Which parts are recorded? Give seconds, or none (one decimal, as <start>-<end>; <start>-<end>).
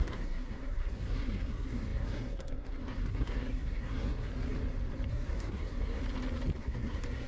4.3-5.1; 6.0-6.6